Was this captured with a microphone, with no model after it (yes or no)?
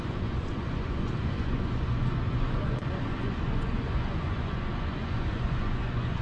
no